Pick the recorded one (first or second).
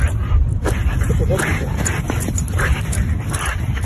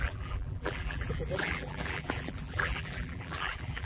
first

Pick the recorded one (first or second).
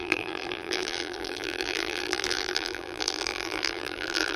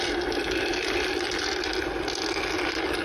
second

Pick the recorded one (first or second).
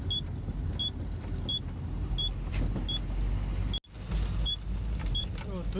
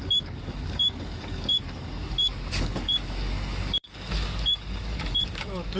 first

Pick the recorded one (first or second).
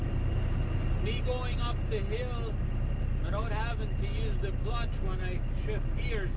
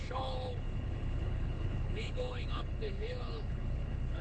first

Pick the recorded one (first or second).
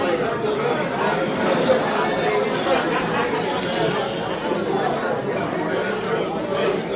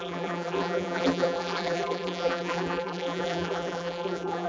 first